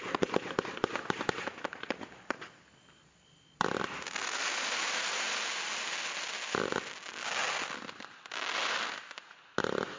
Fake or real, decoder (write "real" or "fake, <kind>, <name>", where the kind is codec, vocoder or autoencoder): real